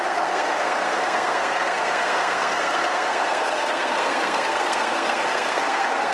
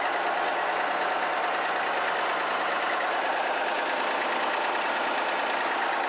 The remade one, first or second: first